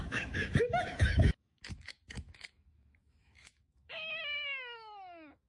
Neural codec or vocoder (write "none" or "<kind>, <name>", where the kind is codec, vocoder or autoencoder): autoencoder, DAC-VAE